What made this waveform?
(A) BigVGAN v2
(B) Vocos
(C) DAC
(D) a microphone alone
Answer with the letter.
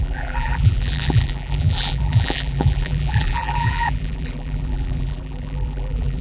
A